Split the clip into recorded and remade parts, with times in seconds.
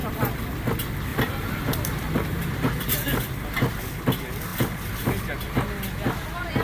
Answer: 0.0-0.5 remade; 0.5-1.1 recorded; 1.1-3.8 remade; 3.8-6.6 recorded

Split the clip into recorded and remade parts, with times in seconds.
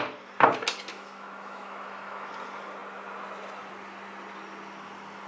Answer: 0.0-0.9 recorded; 0.9-2.3 remade; 2.3-5.3 recorded